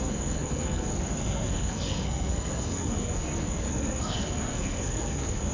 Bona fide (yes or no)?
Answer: no